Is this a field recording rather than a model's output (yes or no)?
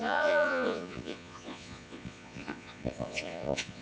no